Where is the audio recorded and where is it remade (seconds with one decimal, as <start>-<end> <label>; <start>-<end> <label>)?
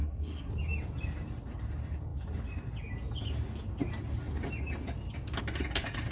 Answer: 0.0-0.5 remade; 0.5-6.1 recorded